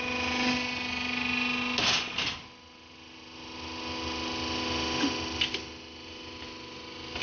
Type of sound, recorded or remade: recorded